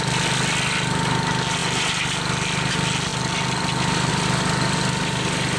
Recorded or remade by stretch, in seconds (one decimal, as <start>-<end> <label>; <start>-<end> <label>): 0.0-5.6 recorded